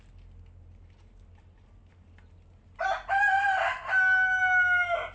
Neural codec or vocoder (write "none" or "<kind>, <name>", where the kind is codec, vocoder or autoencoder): none